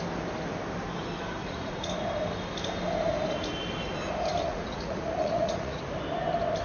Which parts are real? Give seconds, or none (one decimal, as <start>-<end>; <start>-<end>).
0.0-1.4; 1.9-4.4; 5.8-6.6